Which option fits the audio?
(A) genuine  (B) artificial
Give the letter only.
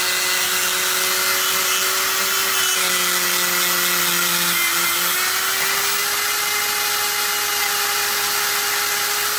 A